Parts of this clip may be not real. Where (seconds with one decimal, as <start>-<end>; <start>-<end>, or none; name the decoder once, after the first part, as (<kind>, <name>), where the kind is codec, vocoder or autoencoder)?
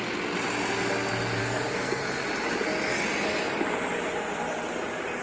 1.4-2.0 (codec, SNAC)